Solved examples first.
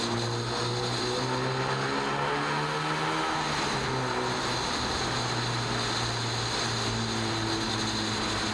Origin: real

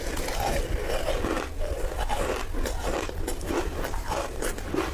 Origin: real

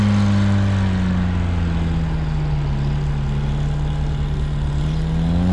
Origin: real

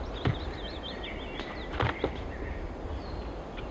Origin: real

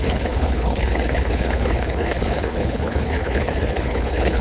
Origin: fake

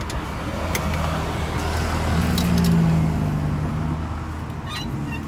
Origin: real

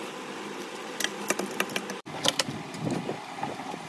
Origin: real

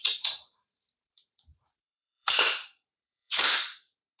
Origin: fake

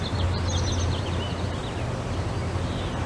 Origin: real